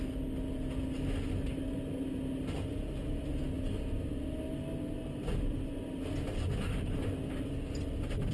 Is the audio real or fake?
real